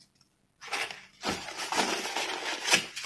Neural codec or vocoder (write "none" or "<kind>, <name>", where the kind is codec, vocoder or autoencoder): none